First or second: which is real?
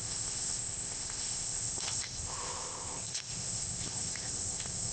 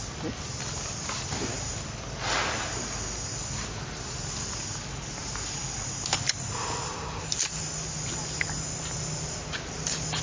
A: second